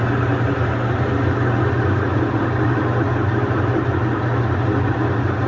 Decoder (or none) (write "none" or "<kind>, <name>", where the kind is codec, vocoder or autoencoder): none